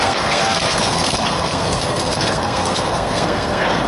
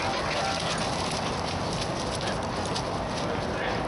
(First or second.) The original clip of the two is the second